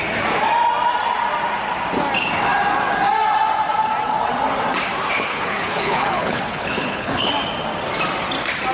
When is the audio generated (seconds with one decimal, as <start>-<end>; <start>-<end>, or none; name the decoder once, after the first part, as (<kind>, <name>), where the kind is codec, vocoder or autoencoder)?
5.3-7.3 (codec, HILCodec)